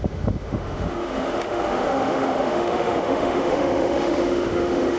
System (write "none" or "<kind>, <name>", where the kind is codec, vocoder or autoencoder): autoencoder, DAC-VAE